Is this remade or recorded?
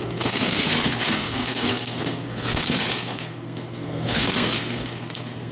remade